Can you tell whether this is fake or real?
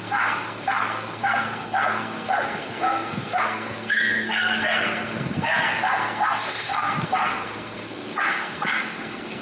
fake